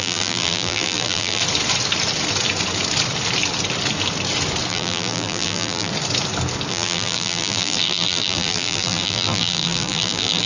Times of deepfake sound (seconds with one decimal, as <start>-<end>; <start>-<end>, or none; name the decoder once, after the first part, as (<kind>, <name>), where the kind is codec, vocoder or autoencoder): 0.0-1.4 (vocoder, BigVGAN v2); 4.7-5.9; 6.7-10.5